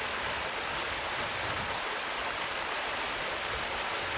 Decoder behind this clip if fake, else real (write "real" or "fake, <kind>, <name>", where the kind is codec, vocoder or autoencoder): real